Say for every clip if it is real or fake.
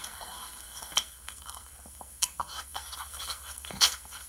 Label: fake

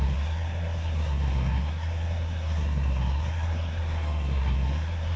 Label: fake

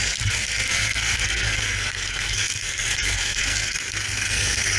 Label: fake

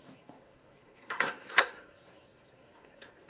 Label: fake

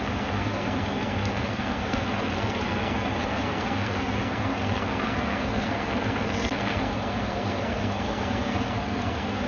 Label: fake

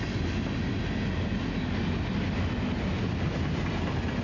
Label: real